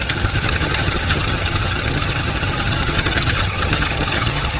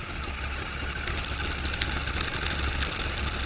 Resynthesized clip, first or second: first